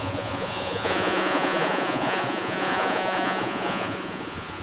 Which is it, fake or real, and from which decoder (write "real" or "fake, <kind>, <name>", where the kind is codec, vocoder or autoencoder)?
fake, vocoder, Vocos